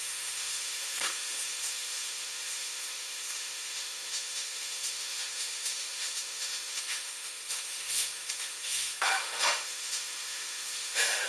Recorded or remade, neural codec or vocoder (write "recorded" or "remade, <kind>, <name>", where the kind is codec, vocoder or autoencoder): remade, autoencoder, DAC-VAE